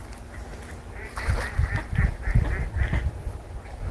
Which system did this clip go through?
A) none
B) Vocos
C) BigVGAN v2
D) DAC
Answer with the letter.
A